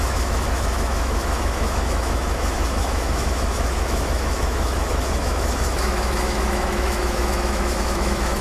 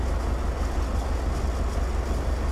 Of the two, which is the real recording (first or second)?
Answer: second